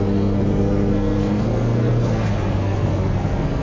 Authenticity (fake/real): fake